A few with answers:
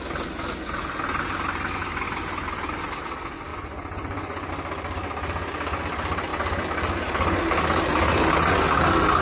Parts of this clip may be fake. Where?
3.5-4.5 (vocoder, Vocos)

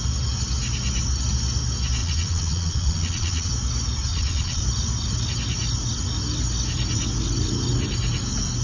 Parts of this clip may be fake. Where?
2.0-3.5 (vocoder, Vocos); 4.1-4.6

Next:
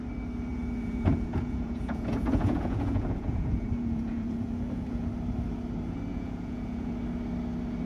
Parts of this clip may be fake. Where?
0.5-5.1 (vocoder, Vocos); 6.1-6.9

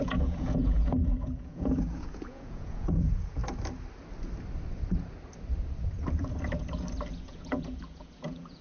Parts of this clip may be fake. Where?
0.0-3.4 (vocoder, Vocos); 7.2-8.6

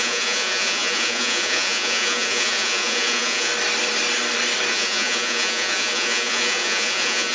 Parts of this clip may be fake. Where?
0.0-3.5 (vocoder, Vocos); 4.7-7.3